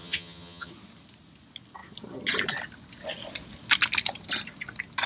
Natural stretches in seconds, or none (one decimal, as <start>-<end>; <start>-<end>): 0.7-5.1